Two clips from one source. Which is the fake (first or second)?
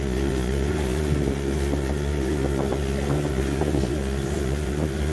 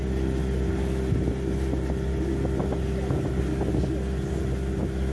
first